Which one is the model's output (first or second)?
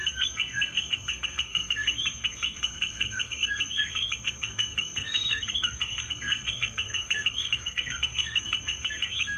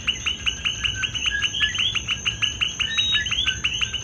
first